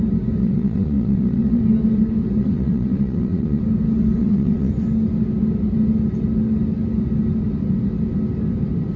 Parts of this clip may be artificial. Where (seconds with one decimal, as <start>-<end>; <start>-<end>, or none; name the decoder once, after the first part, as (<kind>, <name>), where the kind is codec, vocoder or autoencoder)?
0.4-1.6 (vocoder, Vocos); 2.4-3.6; 4.2-4.7